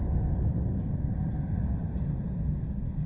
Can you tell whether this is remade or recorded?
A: recorded